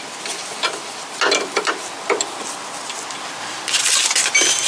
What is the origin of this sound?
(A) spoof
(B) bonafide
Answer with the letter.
B